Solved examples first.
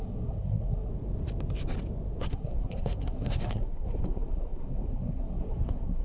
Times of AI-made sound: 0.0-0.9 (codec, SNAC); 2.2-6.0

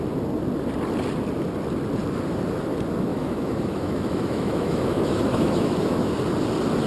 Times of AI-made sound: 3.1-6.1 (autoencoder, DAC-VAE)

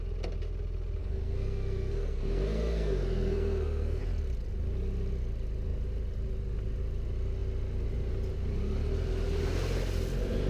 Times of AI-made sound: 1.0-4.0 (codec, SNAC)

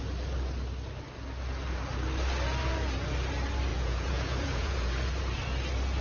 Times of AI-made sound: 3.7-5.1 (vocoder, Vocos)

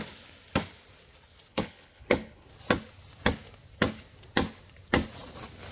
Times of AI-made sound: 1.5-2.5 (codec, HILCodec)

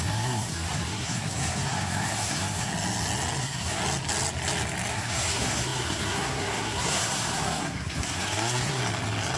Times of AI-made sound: 0.0-2.7 (codec, SNAC); 3.4-3.8; 4.9-8.8

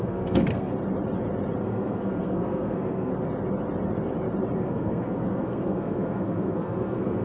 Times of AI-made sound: 0.0-0.7 (codec, SNAC); 1.6-3.1; 4.6-7.2

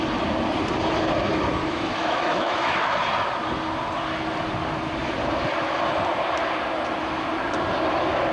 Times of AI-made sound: 1.6-2.9 (autoencoder, DAC-VAE)